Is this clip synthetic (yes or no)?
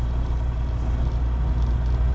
no